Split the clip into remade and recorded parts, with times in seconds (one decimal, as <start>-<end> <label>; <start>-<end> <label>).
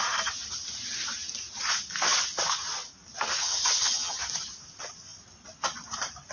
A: 0.0-3.4 recorded; 3.4-4.2 remade; 4.2-6.3 recorded